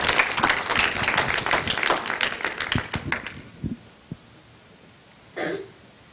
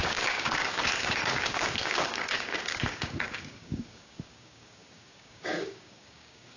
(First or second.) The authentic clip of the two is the first